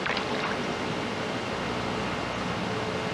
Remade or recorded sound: recorded